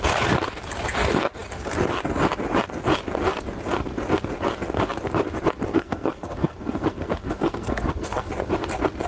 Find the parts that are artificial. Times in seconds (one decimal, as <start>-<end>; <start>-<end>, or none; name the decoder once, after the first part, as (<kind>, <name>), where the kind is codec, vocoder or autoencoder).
5.7-8.3 (codec, SNAC)